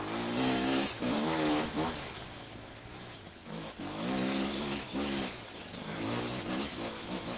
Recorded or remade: remade